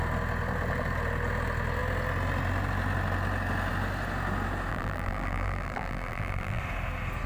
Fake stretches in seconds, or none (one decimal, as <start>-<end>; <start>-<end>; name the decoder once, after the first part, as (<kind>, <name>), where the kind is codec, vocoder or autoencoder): 4.7-6.6 (vocoder, BigVGAN v2)